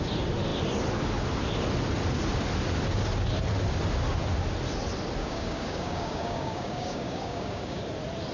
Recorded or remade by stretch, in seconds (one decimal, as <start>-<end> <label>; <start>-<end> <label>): 0.0-5.2 recorded; 5.2-7.8 remade; 7.8-8.3 recorded